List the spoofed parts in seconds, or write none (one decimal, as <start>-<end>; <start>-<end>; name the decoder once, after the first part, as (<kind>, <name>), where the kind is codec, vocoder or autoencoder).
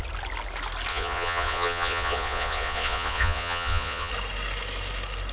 0.9-4.1 (vocoder, Vocos)